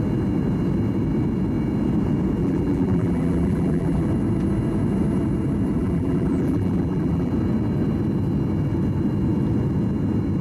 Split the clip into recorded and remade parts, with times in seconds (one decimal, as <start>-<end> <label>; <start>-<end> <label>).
0.0-2.4 recorded; 2.4-4.1 remade; 4.1-5.8 recorded; 5.8-7.3 remade; 7.3-10.4 recorded